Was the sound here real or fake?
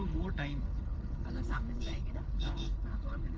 fake